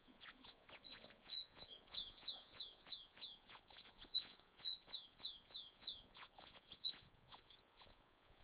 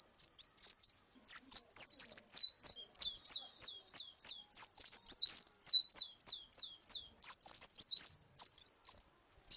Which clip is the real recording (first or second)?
second